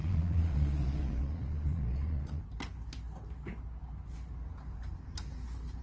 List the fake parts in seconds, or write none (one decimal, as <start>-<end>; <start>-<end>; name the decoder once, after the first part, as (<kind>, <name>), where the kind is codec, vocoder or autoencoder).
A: 0.0-2.4 (vocoder, Vocos)